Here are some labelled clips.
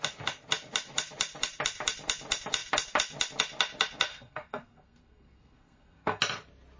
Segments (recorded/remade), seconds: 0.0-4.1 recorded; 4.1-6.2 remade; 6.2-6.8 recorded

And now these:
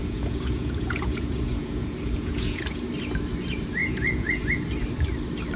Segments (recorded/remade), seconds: 0.0-2.8 remade; 2.8-3.8 recorded; 3.8-4.4 remade; 4.4-5.6 recorded

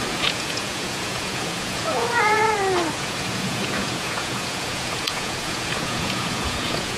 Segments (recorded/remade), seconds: 0.0-2.4 remade; 2.4-3.0 recorded; 3.0-7.0 remade

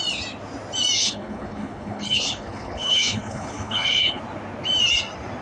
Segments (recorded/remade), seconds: 0.0-1.0 recorded; 1.0-4.2 remade; 4.2-5.4 recorded